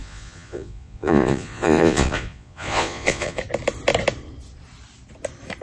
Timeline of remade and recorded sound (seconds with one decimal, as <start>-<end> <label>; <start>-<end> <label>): 0.0-3.4 remade; 3.4-5.6 recorded